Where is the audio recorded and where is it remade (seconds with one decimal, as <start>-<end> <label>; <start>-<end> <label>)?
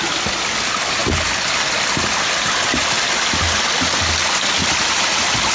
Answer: 0.0-5.5 recorded